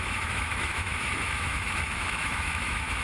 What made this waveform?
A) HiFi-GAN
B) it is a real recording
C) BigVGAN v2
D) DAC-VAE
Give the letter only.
D